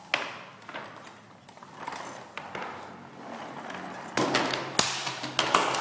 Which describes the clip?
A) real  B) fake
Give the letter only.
A